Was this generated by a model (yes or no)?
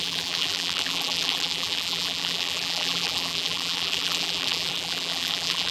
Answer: yes